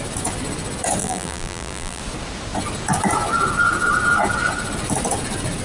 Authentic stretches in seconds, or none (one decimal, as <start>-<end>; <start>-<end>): 0.0-1.0; 2.0-5.6

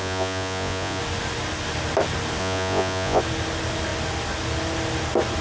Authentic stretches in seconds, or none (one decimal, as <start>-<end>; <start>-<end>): 1.0-2.4; 3.2-5.4

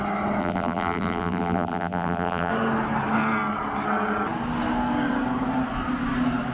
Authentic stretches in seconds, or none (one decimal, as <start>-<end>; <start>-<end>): 0.0-0.4; 2.5-6.5

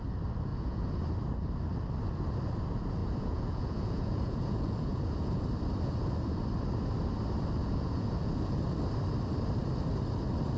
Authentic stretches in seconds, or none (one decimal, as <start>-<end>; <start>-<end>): 0.0-0.5; 1.0-3.0; 5.4-7.6; 8.6-10.6

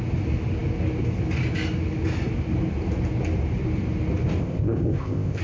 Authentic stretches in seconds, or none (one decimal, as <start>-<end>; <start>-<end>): 0.0-4.4

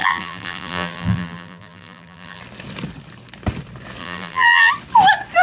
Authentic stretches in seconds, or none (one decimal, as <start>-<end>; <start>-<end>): 2.4-4.0; 4.7-5.4

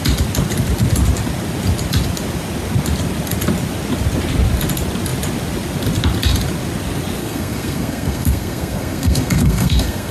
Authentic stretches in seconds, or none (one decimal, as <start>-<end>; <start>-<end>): 0.0-7.2

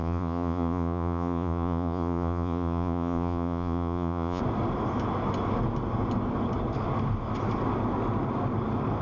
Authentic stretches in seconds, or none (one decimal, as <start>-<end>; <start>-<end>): 4.4-9.0